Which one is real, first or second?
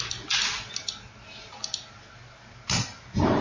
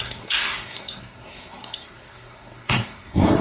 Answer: first